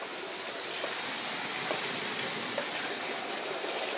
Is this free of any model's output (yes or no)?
yes